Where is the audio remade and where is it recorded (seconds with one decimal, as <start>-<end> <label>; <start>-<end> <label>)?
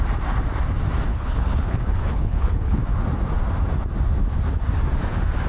0.0-1.1 recorded; 1.1-2.8 remade; 2.8-5.5 recorded